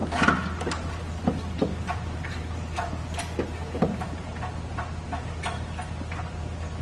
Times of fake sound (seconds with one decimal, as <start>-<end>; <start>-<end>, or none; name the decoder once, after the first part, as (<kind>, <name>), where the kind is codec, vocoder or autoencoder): 0.0-6.8 (vocoder, BigVGAN v2)